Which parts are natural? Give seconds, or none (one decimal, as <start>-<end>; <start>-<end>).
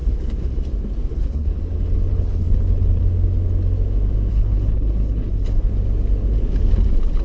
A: 0.6-1.1; 1.6-2.1; 3.0-4.3; 5.7-7.2